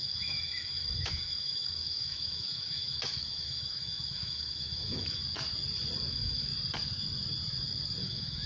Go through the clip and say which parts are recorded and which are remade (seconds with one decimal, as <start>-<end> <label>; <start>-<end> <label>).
0.0-5.2 remade; 5.2-6.1 recorded; 6.1-6.5 remade; 6.5-8.0 recorded; 8.0-8.5 remade